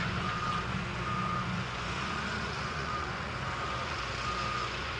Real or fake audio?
fake